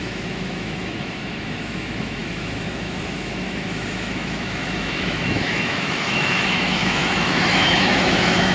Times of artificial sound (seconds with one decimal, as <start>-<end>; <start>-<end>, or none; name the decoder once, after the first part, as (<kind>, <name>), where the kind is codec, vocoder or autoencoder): 0.0-8.5 (autoencoder, DAC-VAE)